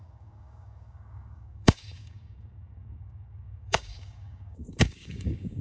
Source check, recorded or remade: remade